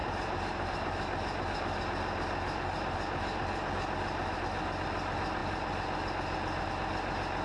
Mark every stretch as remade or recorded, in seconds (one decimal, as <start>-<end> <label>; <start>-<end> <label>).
0.0-7.4 recorded